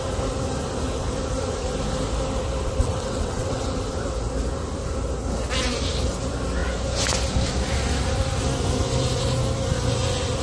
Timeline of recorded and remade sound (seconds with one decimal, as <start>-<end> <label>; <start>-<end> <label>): 0.0-2.8 recorded; 2.8-3.6 remade; 3.6-10.4 recorded